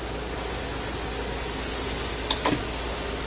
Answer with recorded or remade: recorded